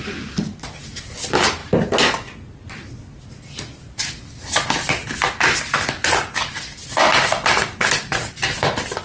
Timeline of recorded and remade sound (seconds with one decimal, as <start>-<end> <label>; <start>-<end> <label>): 0.0-9.0 recorded